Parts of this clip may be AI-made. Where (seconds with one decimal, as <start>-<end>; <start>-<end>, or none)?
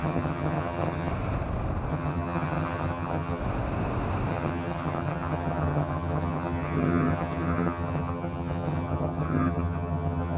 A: 0.0-1.1; 1.9-3.4; 4.3-10.4